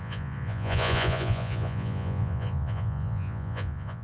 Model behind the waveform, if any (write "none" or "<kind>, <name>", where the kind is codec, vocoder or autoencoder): vocoder, Vocos